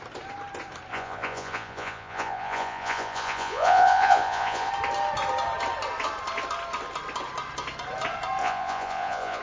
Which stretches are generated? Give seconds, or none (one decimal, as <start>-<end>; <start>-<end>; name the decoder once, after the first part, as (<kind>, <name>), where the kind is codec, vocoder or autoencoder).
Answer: 0.9-4.7 (vocoder, Vocos); 8.4-9.4